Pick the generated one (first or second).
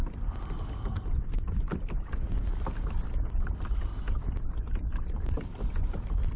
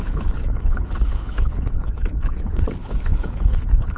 second